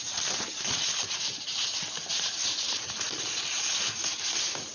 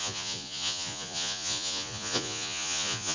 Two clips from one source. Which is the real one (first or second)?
first